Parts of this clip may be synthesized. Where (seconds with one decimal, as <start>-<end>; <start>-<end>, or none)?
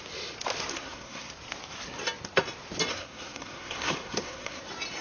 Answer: 0.7-1.3; 2.9-4.6